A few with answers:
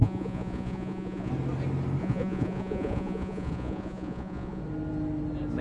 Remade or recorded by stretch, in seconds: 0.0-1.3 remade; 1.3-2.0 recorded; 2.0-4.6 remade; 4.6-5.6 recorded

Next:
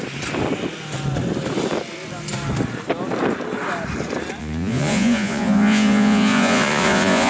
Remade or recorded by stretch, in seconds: 0.0-4.4 recorded; 4.4-7.3 remade